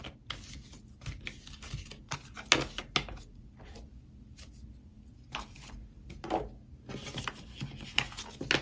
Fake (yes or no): no